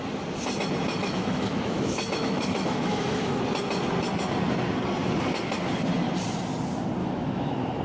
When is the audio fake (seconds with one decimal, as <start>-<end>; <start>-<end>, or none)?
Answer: 1.0-3.4; 7.0-7.8